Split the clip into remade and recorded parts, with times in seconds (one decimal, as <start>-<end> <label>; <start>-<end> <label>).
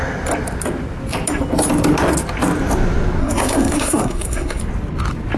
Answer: 0.0-3.2 recorded; 3.2-4.6 remade; 4.6-5.4 recorded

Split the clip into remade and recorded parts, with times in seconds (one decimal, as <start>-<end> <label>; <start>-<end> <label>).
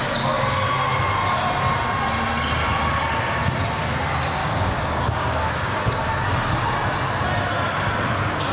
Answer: 0.0-4.4 recorded; 4.4-5.8 remade; 5.8-8.5 recorded